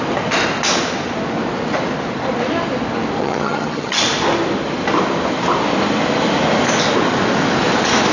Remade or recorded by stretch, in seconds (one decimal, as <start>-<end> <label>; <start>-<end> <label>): 0.0-3.2 recorded; 3.2-4.0 remade; 4.0-8.1 recorded